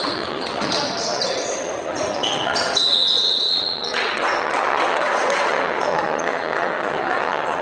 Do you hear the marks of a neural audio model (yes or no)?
yes